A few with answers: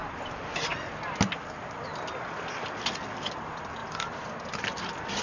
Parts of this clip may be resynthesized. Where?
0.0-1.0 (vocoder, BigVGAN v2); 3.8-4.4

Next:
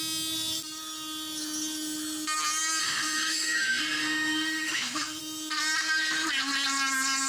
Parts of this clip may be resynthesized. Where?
2.8-5.2 (autoencoder, DAC-VAE)